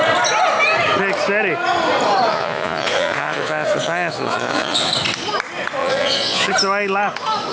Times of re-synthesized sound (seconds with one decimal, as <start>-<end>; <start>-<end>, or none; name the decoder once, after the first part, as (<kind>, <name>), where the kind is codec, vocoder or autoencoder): 2.3-4.9 (vocoder, Vocos); 5.8-6.5